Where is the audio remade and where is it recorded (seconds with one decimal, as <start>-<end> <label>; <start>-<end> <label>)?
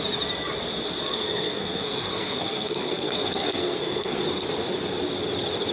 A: 0.0-1.1 recorded; 1.1-4.2 remade; 4.2-5.7 recorded